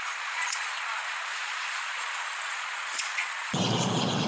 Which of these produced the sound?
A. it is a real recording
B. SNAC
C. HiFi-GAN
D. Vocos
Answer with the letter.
D